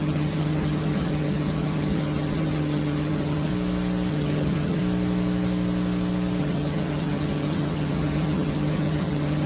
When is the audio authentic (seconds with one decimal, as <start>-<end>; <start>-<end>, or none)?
3.5-4.1; 4.8-6.4